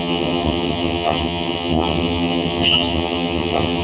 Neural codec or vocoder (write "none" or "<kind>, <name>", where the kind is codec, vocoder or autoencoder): vocoder, HiFi-GAN